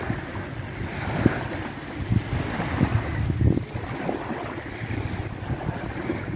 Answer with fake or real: real